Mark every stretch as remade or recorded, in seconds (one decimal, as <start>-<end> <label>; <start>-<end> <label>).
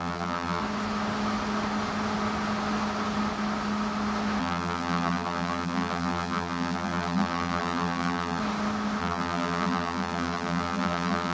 0.0-0.6 remade; 0.6-4.4 recorded; 4.4-8.4 remade; 8.4-9.0 recorded; 9.0-11.3 remade